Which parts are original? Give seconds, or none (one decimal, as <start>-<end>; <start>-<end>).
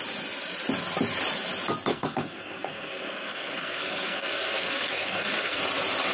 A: 0.0-1.9; 5.6-6.1